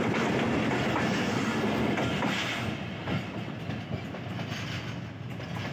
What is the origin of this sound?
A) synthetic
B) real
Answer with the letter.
B